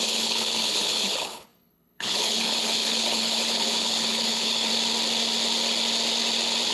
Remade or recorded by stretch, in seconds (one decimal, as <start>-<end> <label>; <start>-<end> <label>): 0.0-4.7 remade; 4.7-6.7 recorded